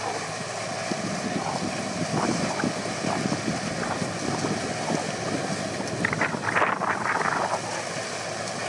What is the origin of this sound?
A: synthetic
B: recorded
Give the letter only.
B